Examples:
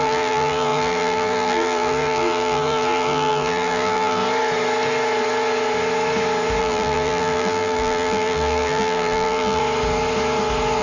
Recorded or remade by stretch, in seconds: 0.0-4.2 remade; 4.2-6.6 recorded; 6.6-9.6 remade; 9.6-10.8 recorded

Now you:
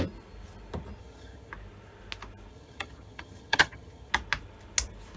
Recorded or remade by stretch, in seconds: 0.0-1.0 recorded; 1.0-1.5 remade; 1.5-2.5 recorded; 2.5-4.1 remade; 4.1-5.2 recorded

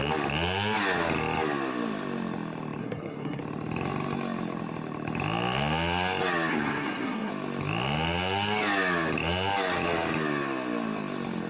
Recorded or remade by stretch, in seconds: 0.0-2.8 recorded; 2.8-3.4 remade; 3.4-6.5 recorded; 6.5-7.3 remade; 7.3-11.5 recorded

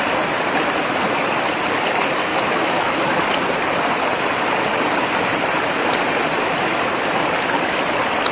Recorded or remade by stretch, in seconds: 0.0-2.3 recorded; 2.3-3.2 remade; 3.2-8.3 recorded